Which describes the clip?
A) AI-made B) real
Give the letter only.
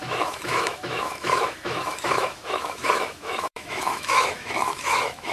A